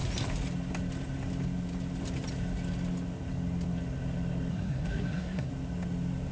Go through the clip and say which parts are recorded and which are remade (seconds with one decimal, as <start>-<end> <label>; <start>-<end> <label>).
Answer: 0.0-4.5 recorded; 4.5-5.5 remade; 5.5-6.3 recorded